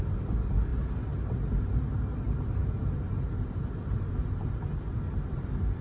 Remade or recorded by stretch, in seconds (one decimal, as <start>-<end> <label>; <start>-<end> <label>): 0.0-5.8 recorded